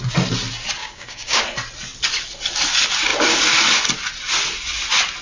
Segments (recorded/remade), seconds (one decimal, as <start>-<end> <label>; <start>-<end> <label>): 0.0-0.8 recorded; 0.8-1.4 remade; 1.4-5.2 recorded